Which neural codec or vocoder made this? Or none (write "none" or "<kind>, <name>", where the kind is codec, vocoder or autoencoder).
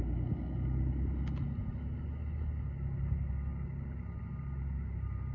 none